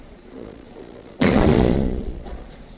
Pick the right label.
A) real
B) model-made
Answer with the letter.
B